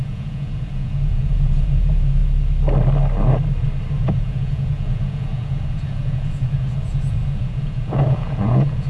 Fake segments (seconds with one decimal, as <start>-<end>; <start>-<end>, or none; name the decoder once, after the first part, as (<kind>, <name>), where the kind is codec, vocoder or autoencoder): 0.0-2.2 (vocoder, Vocos); 3.9-8.9